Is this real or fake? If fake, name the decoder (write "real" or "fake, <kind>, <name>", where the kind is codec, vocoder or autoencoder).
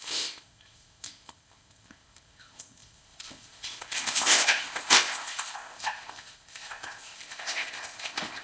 fake, codec, ZipCodec